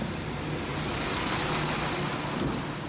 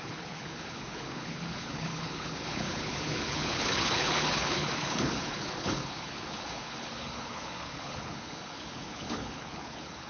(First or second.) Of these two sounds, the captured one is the first